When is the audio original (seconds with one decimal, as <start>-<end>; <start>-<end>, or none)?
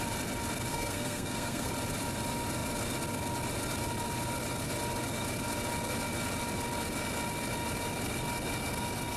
0.0-0.7; 1.7-9.2